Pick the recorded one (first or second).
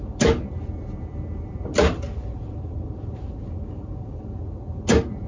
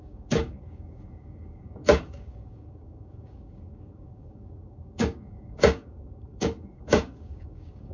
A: first